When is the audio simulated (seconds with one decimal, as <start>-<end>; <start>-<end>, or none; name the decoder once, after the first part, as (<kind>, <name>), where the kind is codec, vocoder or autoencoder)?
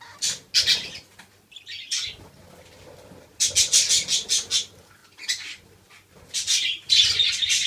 none